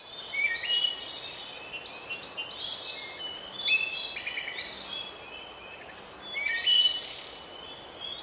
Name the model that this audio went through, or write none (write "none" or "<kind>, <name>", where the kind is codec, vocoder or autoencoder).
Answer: none